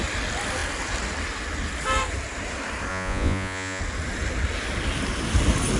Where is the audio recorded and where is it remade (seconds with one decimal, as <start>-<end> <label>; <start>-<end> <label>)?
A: 0.0-2.9 recorded; 2.9-3.8 remade; 3.8-5.8 recorded